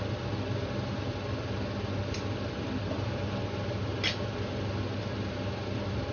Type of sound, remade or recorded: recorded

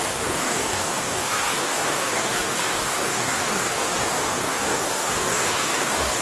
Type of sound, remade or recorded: remade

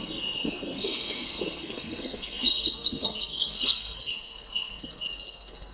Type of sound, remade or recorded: remade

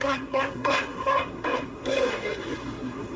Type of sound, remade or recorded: remade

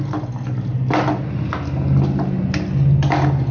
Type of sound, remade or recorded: recorded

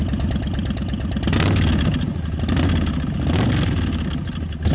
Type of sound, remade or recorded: recorded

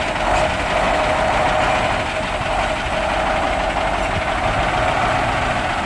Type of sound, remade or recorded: recorded